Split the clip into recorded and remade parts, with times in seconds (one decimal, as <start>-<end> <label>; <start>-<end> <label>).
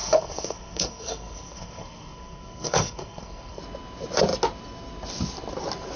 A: 0.0-3.6 remade; 3.6-6.0 recorded